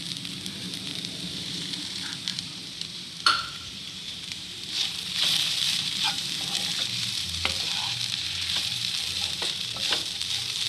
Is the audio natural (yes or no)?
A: no